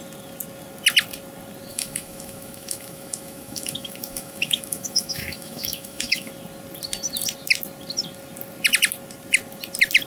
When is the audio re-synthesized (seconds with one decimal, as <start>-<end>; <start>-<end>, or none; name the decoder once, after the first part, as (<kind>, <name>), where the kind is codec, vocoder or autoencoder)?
1.7-6.3 (autoencoder, DAC-VAE)